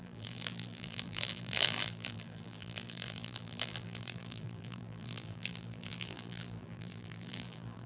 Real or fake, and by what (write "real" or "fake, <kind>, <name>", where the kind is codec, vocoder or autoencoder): fake, vocoder, BigVGAN v2